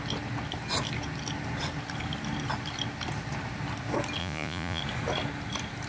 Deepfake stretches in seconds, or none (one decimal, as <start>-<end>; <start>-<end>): 4.2-4.8